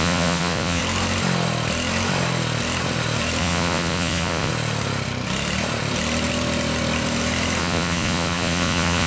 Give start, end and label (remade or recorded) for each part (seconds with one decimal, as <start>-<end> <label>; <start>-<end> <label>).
0.0-0.8 remade; 0.8-3.4 recorded; 3.4-4.5 remade; 4.5-7.6 recorded; 7.6-9.1 remade